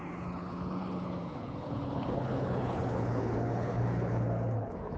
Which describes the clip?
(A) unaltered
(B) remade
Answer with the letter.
B